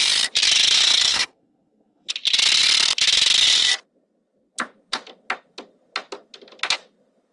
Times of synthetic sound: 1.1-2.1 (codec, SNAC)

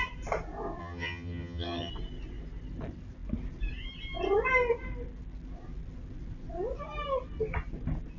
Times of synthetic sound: 0.8-1.9 (vocoder, HiFi-GAN)

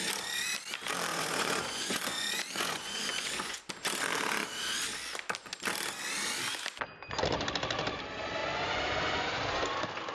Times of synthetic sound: 1.1-3.6 (vocoder, Vocos); 8.4-9.6

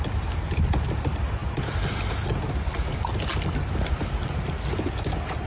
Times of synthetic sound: none

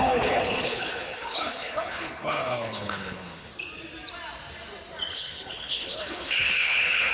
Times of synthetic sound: 0.0-3.5 (codec, HILCodec); 5.1-7.1

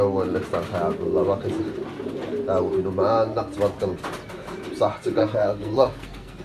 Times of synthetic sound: 5.2-6.4 (codec, SNAC)

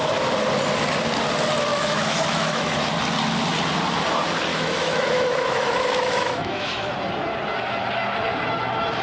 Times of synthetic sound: 1.7-2.9 (autoencoder, DAC-VAE); 4.5-6.9

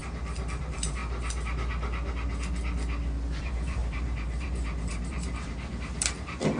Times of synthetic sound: 0.6-1.0 (vocoder, BigVGAN v2); 3.4-6.6